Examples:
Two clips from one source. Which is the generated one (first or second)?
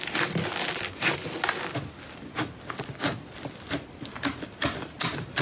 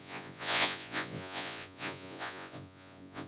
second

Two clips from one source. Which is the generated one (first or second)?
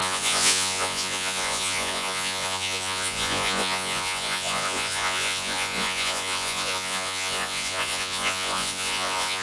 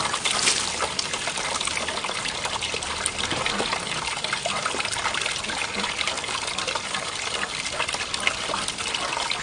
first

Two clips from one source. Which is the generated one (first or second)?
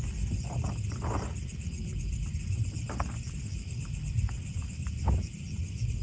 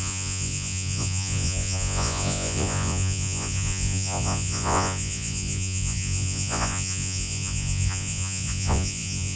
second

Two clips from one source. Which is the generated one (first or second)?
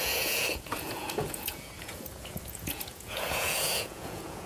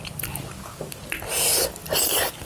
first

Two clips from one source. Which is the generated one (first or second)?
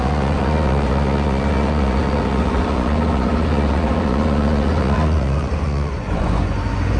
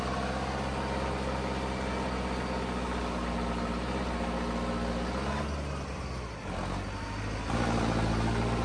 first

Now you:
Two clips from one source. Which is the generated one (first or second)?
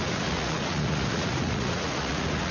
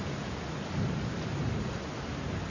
first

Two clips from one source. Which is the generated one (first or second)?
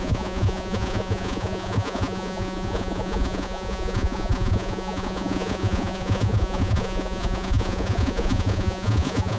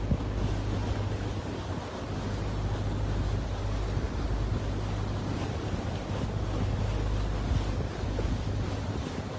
first